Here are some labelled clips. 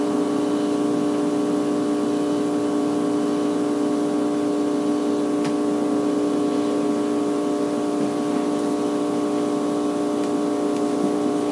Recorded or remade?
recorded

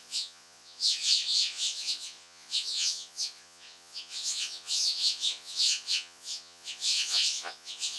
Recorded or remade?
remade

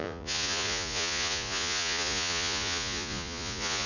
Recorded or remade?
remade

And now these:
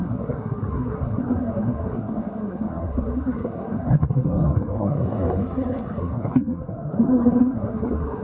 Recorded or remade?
remade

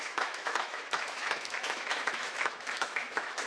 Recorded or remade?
remade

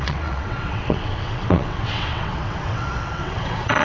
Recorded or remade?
remade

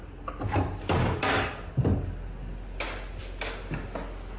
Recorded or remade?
recorded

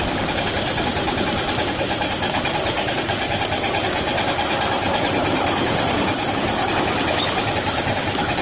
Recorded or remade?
recorded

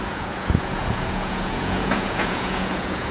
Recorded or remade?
remade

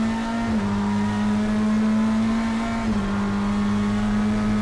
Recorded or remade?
recorded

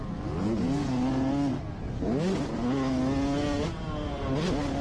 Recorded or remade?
recorded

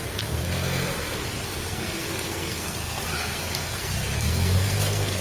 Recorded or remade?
remade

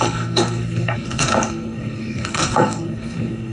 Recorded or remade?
remade